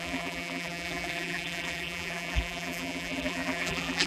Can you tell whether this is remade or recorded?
remade